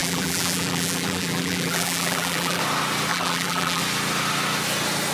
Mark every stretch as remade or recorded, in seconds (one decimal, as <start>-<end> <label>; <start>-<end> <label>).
0.0-2.6 remade; 2.6-3.1 recorded; 3.1-3.8 remade; 3.8-5.1 recorded